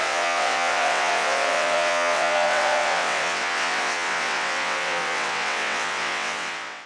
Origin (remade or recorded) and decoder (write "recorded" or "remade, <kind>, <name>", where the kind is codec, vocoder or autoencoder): remade, vocoder, WaveNeXt